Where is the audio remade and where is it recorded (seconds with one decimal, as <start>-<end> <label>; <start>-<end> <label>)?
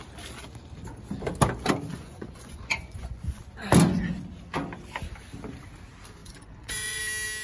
0.0-1.9 recorded; 1.9-3.4 remade; 3.4-6.2 recorded; 6.2-7.0 remade; 7.0-7.4 recorded